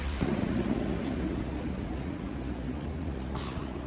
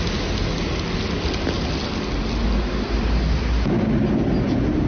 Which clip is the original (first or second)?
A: second